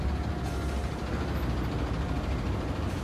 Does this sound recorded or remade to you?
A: recorded